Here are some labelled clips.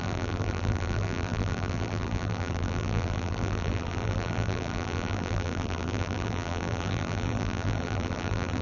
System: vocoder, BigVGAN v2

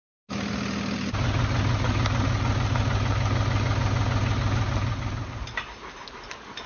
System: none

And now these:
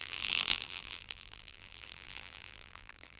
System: vocoder, BigVGAN v2